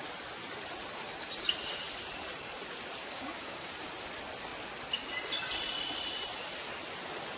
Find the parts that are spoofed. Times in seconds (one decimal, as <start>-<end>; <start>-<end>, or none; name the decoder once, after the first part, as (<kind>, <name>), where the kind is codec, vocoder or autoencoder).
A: 3.0-3.7 (codec, DAC)